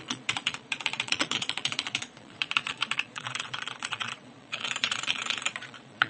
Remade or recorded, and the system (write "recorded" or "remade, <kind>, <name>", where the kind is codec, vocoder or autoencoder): remade, vocoder, Vocos